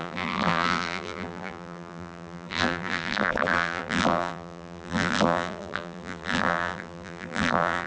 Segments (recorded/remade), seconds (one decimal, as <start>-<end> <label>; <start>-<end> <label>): 0.0-7.9 remade